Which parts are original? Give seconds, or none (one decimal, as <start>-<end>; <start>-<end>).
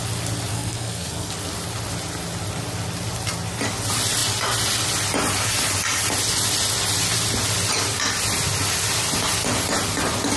0.0-0.5; 1.3-10.4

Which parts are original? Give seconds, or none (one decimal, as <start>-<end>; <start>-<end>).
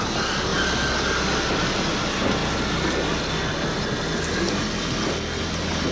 0.0-5.9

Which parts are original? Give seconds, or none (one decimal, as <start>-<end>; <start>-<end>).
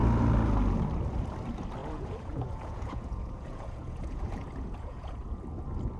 0.0-1.8; 5.4-6.0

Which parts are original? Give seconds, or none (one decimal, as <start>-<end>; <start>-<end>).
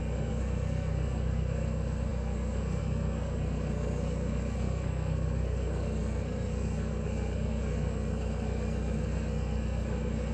none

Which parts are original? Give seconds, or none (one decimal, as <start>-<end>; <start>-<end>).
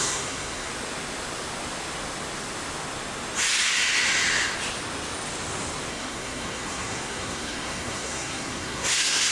0.7-5.9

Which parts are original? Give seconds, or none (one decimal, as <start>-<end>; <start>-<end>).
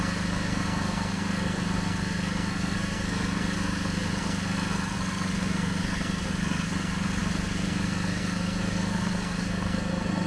none